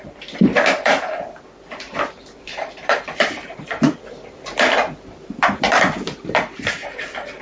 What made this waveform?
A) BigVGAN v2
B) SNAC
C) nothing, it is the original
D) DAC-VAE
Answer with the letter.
A